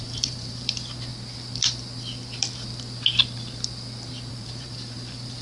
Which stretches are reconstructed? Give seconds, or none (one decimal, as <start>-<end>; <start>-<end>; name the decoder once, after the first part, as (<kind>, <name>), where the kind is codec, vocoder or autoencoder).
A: 0.0-1.1 (vocoder, BigVGAN v2); 4.3-5.4